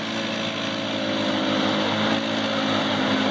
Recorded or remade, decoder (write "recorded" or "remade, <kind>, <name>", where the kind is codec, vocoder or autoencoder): recorded